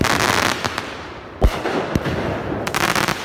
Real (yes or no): yes